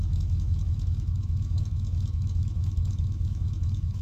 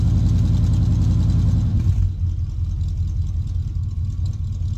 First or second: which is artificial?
first